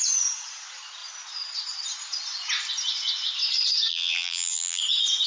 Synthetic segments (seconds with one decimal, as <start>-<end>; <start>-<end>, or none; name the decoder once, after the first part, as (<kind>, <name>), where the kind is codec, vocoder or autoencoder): 3.9-4.8 (vocoder, BigVGAN v2)

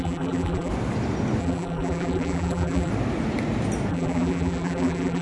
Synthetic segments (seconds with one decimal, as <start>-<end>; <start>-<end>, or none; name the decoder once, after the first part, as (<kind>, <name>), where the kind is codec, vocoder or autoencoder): 0.0-0.7 (vocoder, BigVGAN v2); 1.4-2.9; 3.9-5.2

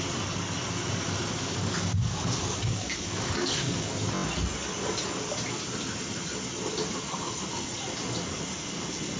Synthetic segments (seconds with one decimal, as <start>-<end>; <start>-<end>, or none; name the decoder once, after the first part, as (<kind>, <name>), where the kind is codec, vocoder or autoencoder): 1.3-4.0 (codec, DAC)

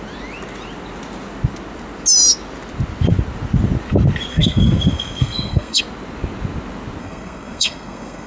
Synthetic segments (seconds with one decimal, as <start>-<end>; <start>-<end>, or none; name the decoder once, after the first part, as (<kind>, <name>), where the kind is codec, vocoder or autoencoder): 4.3-5.8 (codec, SNAC); 7.0-8.3

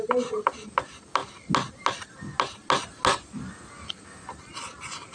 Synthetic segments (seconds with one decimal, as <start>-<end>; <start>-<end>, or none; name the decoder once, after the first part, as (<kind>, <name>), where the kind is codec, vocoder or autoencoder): none

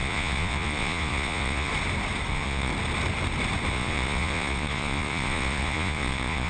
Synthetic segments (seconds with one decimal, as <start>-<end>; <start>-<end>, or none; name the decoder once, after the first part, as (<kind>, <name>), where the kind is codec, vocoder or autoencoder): 0.0-1.7 (vocoder, Vocos); 2.3-2.7; 3.7-6.5